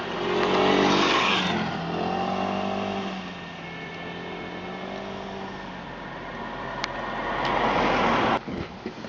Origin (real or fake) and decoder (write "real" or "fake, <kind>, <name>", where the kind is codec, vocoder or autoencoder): real